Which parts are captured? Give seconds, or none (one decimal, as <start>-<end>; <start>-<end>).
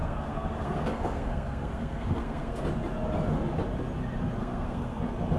2.6-4.4; 5.0-5.4